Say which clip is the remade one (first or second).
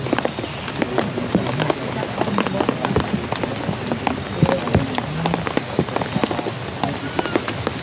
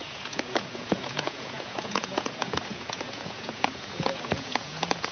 second